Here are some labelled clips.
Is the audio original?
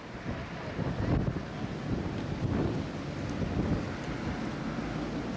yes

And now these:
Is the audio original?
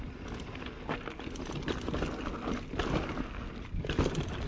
yes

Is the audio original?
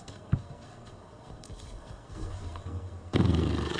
no